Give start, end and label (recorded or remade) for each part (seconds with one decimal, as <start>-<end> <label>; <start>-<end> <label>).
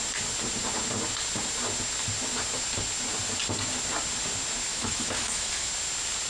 0.0-4.7 recorded; 4.7-5.7 remade; 5.7-6.3 recorded